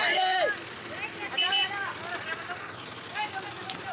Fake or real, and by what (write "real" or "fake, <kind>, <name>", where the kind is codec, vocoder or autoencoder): real